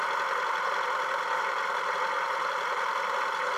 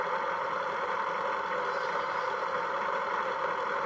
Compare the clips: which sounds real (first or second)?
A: second